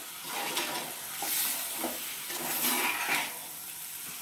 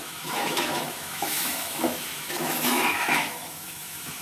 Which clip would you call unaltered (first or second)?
first